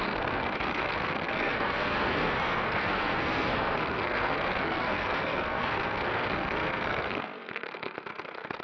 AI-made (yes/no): yes